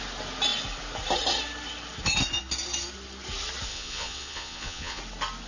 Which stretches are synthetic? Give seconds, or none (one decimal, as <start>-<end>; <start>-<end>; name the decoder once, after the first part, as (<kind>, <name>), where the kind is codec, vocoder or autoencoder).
3.7-5.0 (vocoder, Vocos)